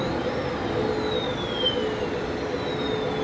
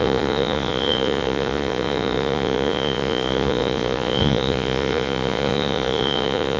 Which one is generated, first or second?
second